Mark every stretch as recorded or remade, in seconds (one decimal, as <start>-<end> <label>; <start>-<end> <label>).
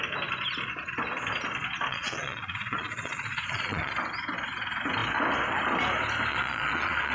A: 0.0-1.9 recorded; 1.9-3.9 remade; 3.9-6.3 recorded; 6.3-7.1 remade